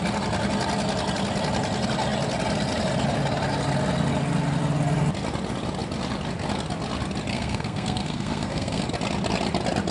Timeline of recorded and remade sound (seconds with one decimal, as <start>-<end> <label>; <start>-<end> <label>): 0.0-7.3 recorded; 7.3-8.8 remade; 8.8-9.9 recorded